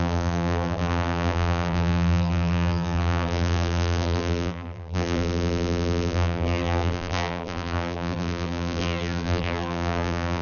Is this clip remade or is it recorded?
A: remade